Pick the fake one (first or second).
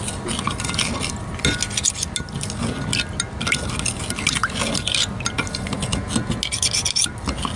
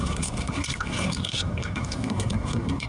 second